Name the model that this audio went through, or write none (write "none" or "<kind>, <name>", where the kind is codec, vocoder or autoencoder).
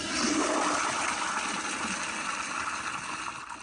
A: none